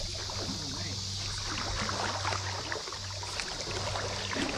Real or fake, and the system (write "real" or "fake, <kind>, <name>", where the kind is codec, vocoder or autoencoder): real